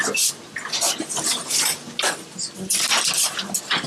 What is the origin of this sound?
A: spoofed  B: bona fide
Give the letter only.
B